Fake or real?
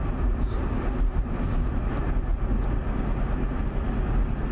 real